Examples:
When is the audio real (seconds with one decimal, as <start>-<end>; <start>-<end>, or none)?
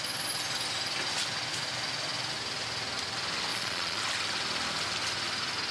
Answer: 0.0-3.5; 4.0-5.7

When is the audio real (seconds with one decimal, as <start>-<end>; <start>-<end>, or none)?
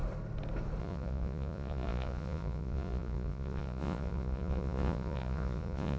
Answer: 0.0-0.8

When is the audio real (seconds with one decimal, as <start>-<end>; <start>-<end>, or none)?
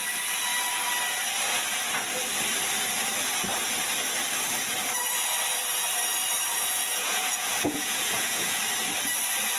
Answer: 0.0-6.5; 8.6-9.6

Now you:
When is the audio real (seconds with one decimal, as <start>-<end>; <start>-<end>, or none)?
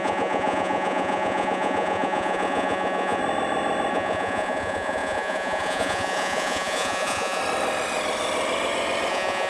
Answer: 3.2-3.9; 7.4-9.1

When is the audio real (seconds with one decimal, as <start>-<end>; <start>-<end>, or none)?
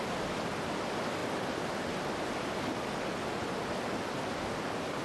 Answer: 0.0-5.0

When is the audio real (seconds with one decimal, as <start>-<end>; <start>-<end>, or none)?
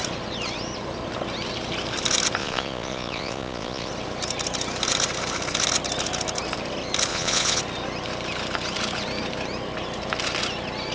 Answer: 0.0-2.4; 3.9-7.1; 7.6-10.9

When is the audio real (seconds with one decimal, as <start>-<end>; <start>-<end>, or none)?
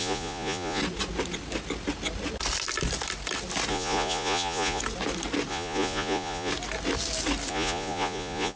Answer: 0.8-3.7; 4.8-5.5; 6.5-7.5